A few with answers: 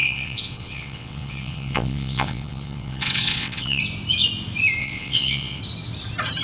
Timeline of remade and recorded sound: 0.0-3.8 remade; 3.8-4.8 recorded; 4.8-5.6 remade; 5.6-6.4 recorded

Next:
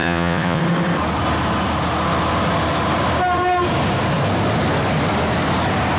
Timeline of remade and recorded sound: 0.0-0.6 remade; 0.6-6.0 recorded

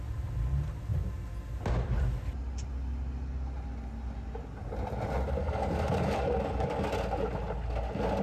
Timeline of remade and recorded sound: 0.0-5.4 recorded; 5.4-6.9 remade; 6.9-8.2 recorded